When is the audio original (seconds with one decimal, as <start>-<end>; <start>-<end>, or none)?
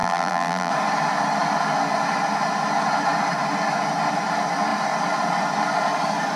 0.7-6.4